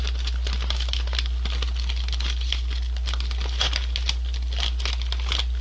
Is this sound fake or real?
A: real